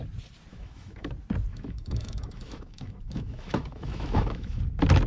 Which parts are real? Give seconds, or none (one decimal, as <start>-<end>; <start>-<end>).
0.0-0.5; 1.1-1.5; 4.6-5.1